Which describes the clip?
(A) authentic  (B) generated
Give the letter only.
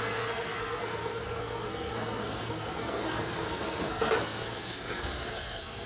B